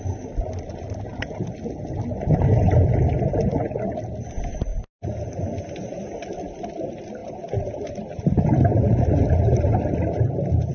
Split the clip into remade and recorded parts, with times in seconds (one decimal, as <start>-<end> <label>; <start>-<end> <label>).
0.0-10.7 recorded